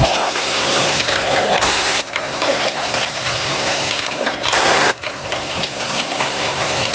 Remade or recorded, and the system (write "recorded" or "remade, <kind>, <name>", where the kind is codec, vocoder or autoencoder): remade, codec, SNAC